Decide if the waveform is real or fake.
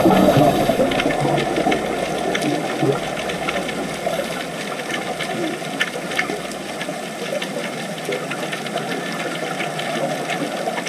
real